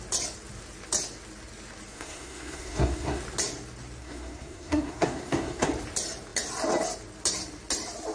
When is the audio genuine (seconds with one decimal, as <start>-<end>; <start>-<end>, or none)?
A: 0.0-1.9; 3.2-4.0; 5.7-8.1